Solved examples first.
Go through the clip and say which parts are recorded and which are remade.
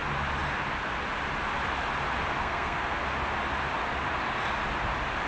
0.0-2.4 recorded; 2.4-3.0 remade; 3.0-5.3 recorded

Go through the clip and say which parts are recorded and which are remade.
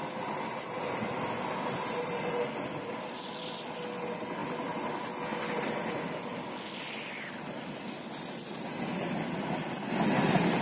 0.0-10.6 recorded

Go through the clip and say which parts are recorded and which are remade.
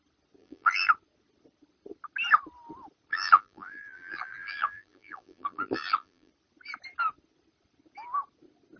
0.0-0.4 recorded; 0.4-0.9 remade; 0.9-3.1 recorded; 3.1-6.3 remade; 6.3-8.8 recorded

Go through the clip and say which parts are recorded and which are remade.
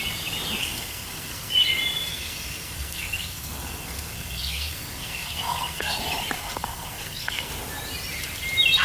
0.0-0.6 recorded; 0.6-1.5 remade; 1.5-2.1 recorded; 2.1-6.0 remade; 6.0-6.4 recorded; 6.4-7.5 remade; 7.5-8.8 recorded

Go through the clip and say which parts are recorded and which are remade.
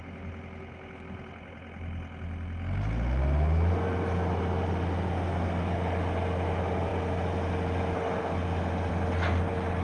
0.0-9.8 recorded